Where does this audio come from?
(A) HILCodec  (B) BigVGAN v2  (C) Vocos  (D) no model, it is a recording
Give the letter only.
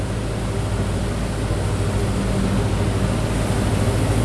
D